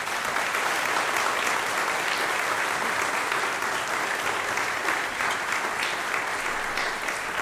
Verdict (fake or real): real